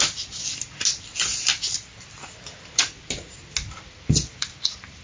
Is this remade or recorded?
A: recorded